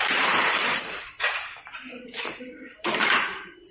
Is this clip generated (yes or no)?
yes